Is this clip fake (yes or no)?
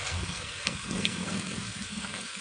yes